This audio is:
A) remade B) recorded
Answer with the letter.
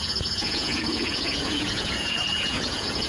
A